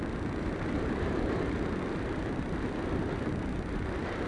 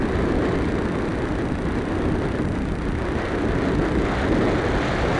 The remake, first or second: first